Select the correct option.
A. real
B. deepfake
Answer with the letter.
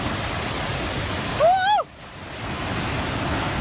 A